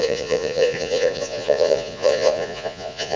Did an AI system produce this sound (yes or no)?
yes